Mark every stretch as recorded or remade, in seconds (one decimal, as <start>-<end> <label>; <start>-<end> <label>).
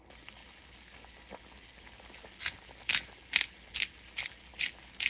0.0-5.1 recorded